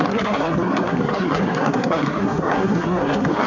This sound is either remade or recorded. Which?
remade